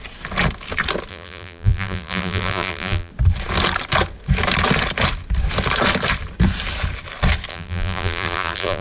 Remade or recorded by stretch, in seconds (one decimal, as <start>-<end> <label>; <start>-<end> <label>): 0.0-1.1 recorded; 1.1-3.1 remade; 3.1-7.5 recorded; 7.5-8.8 remade